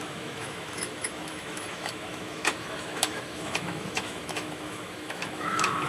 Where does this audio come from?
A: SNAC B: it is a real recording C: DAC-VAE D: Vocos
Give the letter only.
C